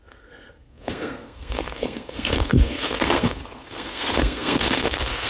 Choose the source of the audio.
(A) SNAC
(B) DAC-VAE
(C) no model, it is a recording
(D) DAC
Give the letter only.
A